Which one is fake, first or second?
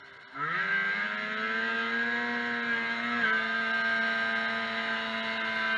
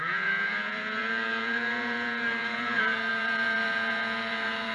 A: second